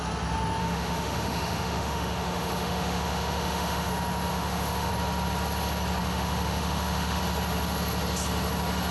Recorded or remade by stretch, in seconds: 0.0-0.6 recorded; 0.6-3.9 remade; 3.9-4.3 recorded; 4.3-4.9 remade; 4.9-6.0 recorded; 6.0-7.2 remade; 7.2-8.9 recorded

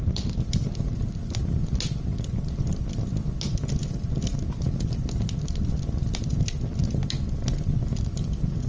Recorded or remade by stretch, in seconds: 0.0-8.7 recorded

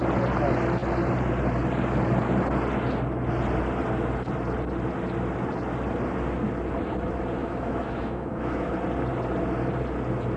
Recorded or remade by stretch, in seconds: 0.0-7.4 recorded; 7.4-8.7 remade; 8.7-10.4 recorded

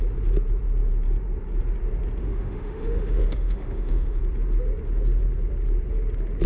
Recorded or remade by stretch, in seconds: 0.0-2.2 recorded; 2.2-4.2 remade; 4.2-6.5 recorded

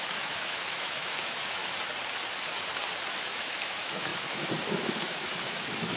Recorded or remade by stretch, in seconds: 0.0-1.6 remade; 1.6-3.1 recorded; 3.1-6.0 remade

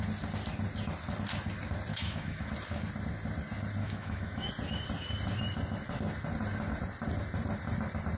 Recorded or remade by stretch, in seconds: 0.0-1.9 recorded; 1.9-2.5 remade; 2.5-3.8 recorded; 3.8-4.5 remade; 4.5-8.2 recorded